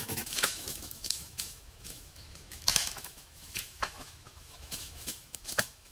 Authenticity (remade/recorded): remade